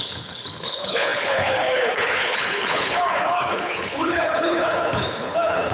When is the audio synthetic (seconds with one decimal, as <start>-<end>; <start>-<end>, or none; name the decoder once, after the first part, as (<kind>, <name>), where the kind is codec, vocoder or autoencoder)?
0.0-5.7 (codec, HILCodec)